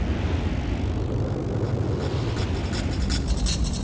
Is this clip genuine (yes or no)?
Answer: yes